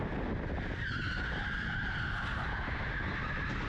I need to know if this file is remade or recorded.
recorded